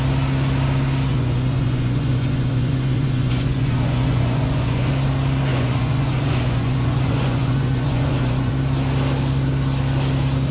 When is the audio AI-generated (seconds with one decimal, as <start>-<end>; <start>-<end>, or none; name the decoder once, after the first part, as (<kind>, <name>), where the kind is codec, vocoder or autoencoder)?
1.1-4.9 (vocoder, Vocos); 5.5-8.5